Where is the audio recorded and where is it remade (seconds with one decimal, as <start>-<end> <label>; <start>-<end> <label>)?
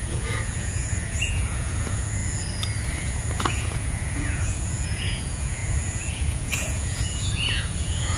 0.0-2.2 remade; 2.2-3.0 recorded; 3.0-8.2 remade